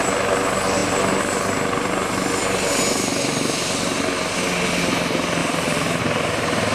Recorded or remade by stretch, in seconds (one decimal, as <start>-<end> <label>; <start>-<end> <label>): 0.0-6.7 recorded